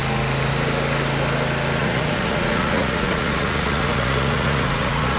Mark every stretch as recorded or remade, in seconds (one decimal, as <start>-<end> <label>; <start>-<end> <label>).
0.0-1.8 recorded; 1.8-5.2 remade